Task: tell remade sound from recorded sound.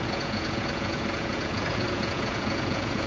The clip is remade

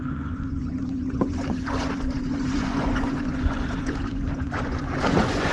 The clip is remade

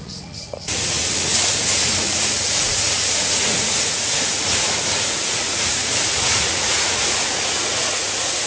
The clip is remade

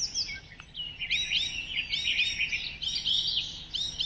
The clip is recorded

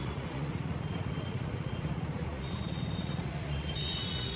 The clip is remade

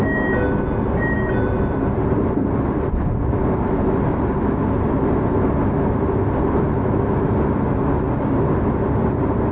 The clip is recorded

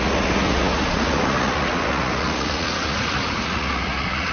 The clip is remade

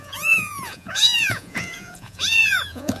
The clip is remade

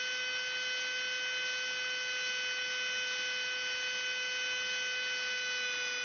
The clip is recorded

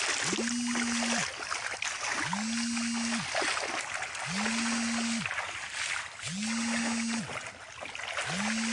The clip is recorded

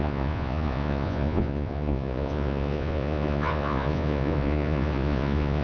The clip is remade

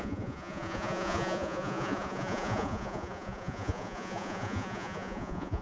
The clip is remade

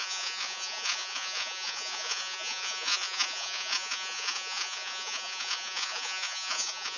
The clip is remade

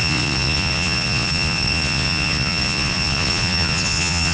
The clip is remade